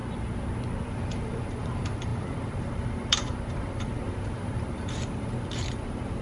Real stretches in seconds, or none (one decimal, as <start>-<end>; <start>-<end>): 0.0-0.9